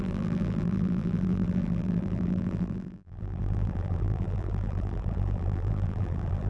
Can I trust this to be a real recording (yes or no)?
no